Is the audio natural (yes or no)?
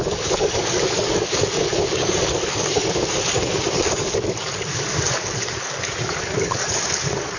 no